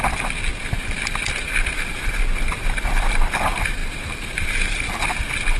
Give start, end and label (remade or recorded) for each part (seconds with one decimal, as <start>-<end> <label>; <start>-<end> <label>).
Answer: 0.0-5.6 recorded

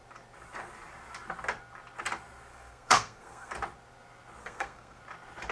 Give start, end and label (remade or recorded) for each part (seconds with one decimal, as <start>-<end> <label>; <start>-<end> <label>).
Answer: 0.0-2.5 recorded; 2.5-3.5 remade; 3.5-4.4 recorded; 4.4-5.0 remade; 5.0-5.5 recorded

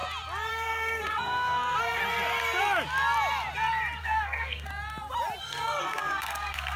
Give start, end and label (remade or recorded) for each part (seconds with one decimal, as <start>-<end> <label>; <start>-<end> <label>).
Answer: 0.0-0.5 recorded; 0.5-2.0 remade; 2.0-4.0 recorded; 4.0-4.7 remade; 4.7-5.4 recorded; 5.4-6.8 remade

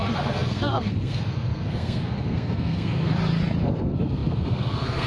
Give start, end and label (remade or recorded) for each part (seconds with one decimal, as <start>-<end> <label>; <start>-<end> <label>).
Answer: 0.0-3.1 remade; 3.1-3.6 recorded; 3.6-5.1 remade

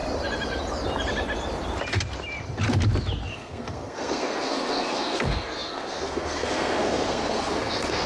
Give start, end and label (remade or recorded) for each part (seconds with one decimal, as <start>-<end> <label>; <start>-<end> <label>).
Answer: 0.0-3.3 recorded; 3.3-8.1 remade

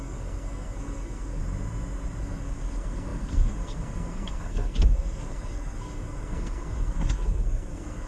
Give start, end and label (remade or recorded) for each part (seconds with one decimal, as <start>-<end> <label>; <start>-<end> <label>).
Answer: 0.0-1.4 remade; 1.4-2.2 recorded; 2.2-8.1 remade

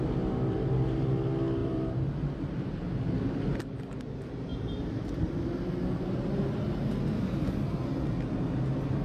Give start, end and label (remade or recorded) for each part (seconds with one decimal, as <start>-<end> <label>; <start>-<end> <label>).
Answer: 0.0-1.6 recorded; 1.6-2.1 remade; 2.1-4.5 recorded; 4.5-5.3 remade; 5.3-9.0 recorded